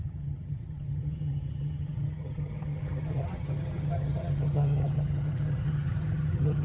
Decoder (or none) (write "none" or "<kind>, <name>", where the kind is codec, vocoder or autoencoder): vocoder, HiFi-GAN